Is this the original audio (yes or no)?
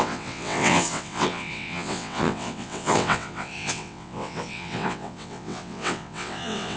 no